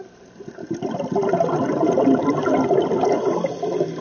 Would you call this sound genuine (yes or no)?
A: yes